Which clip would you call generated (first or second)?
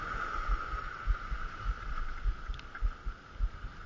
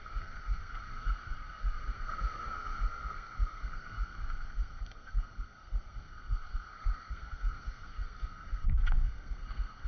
second